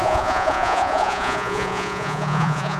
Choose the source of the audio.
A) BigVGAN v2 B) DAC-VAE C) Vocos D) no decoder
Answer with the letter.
C